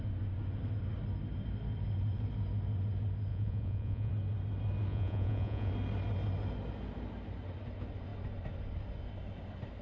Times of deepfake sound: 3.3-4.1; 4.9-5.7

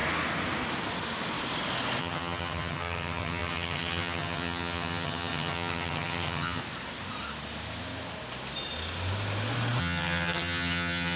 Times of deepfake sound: 2.0-6.6; 9.8-11.2